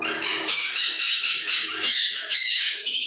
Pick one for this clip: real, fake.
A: fake